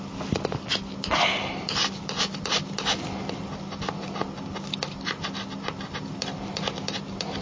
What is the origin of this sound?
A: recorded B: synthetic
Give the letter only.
A